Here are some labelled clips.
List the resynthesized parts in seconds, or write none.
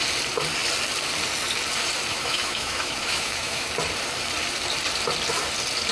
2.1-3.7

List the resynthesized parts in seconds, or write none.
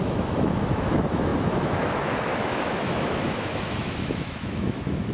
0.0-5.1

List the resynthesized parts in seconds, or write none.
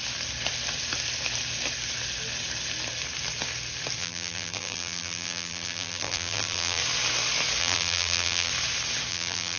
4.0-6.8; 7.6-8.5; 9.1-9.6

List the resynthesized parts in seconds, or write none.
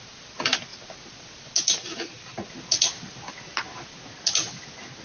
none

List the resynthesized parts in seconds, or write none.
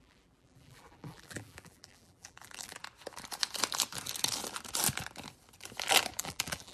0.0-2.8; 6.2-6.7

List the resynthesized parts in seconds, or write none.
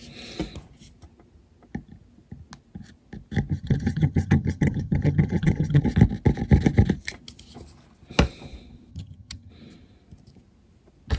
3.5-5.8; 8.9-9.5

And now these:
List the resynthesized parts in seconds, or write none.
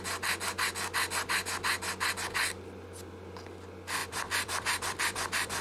4.0-5.6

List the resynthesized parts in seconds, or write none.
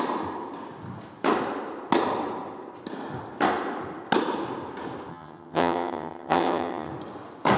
5.1-6.9